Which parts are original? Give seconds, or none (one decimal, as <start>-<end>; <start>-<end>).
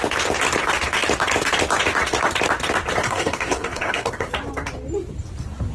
0.0-3.0; 4.3-5.7